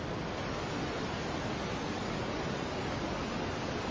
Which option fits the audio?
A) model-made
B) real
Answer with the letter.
B